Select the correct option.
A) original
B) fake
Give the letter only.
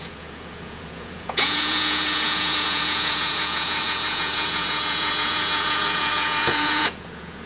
B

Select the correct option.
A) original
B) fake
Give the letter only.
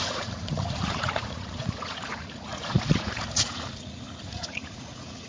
B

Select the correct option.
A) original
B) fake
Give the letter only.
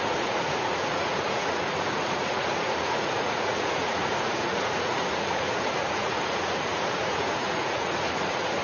B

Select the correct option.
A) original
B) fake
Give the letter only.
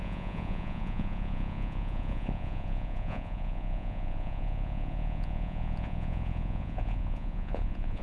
B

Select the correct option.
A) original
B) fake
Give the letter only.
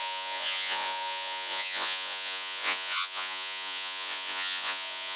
B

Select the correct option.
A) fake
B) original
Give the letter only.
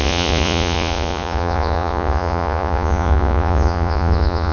A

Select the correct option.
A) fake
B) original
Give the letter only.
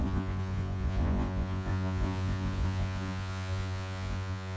A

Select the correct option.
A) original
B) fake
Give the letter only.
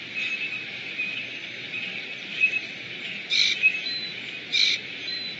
A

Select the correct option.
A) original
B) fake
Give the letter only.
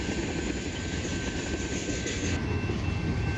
A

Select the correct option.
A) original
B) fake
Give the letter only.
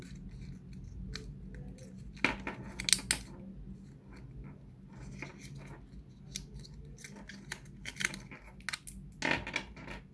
A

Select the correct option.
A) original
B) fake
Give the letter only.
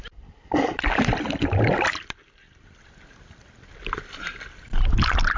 A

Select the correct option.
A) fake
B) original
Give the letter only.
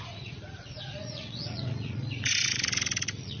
A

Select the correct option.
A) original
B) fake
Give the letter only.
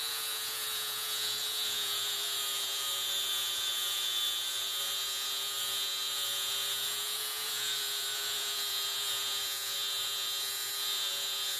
B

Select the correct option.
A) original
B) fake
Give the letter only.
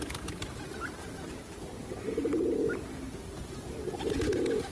A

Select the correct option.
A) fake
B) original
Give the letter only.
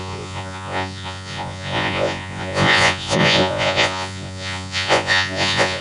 A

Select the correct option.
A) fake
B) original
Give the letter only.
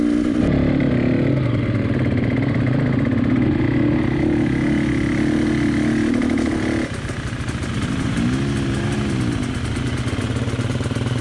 B